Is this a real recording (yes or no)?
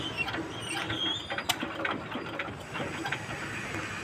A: yes